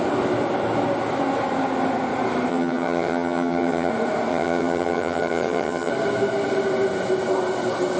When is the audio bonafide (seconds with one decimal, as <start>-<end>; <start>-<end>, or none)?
0.0-2.5; 3.9-4.3; 5.9-8.0

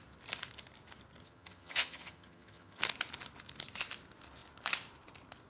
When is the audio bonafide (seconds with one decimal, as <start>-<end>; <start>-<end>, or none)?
0.0-1.2; 2.8-5.5

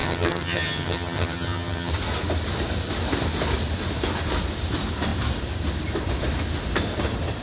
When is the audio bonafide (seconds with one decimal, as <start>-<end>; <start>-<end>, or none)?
1.9-7.4

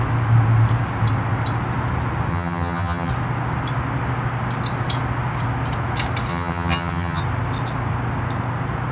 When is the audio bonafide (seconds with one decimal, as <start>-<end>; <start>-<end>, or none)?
0.0-2.3; 3.1-6.3; 7.2-8.9

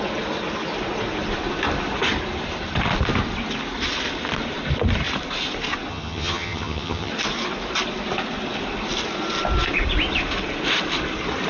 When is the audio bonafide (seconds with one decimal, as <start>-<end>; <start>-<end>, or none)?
0.0-5.9; 7.1-11.5

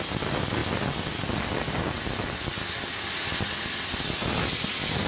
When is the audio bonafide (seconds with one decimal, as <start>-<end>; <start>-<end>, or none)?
0.0-5.1

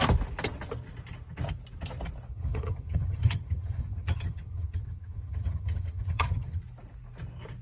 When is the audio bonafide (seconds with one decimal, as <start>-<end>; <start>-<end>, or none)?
0.0-2.3; 6.6-7.6